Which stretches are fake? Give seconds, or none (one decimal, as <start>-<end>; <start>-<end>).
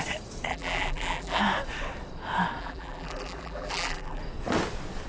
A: 0.5-1.4; 2.6-4.2